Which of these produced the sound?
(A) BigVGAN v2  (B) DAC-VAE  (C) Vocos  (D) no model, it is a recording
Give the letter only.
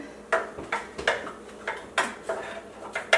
D